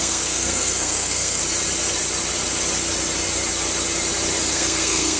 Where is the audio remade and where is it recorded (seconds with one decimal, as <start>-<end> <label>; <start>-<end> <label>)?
0.0-1.4 remade; 1.4-4.5 recorded; 4.5-5.2 remade